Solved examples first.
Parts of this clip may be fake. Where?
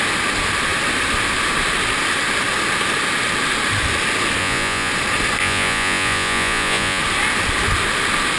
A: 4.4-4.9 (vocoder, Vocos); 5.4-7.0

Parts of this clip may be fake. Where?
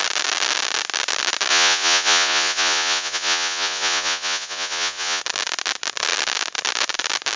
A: 1.5-5.2 (vocoder, Vocos)